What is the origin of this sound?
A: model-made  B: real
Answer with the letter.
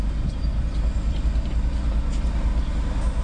B